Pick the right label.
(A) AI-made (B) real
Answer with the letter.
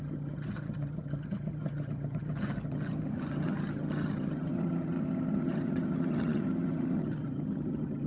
A